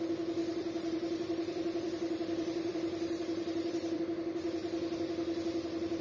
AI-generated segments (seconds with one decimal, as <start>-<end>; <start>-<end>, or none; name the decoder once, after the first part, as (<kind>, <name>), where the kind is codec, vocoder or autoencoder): 0.4-4.0 (vocoder, BigVGAN v2)